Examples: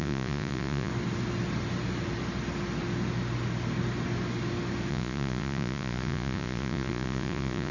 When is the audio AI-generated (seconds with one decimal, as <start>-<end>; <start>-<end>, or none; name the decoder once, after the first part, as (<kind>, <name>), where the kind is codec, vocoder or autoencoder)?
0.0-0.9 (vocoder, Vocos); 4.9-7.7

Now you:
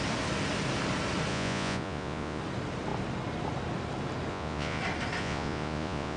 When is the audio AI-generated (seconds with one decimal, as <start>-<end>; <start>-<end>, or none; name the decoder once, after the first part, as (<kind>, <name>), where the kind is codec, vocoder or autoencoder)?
1.3-2.4 (vocoder, Vocos); 4.3-4.8; 5.2-6.2

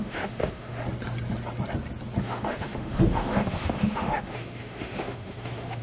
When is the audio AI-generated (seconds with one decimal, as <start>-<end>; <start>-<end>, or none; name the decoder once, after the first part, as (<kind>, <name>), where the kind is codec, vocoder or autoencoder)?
0.0-0.8 (autoencoder, DAC-VAE); 2.2-5.8

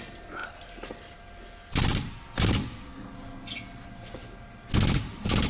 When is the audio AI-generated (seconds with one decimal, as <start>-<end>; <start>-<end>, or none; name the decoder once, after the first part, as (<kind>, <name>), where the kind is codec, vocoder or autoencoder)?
none

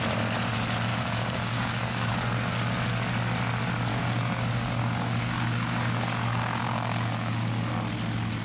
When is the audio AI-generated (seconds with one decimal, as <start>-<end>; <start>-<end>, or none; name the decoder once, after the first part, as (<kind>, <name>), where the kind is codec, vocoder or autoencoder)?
0.9-2.1 (codec, DAC); 3.9-7.7